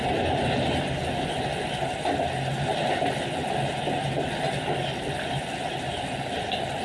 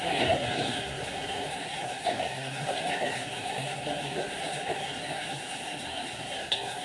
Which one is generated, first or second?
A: second